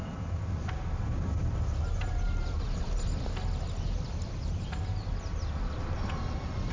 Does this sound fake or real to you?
real